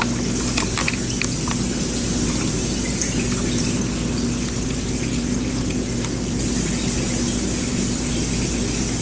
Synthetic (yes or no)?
no